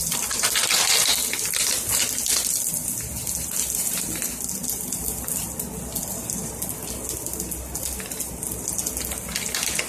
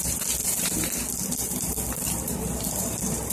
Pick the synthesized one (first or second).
second